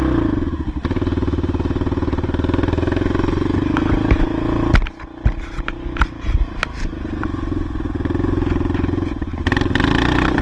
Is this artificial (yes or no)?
no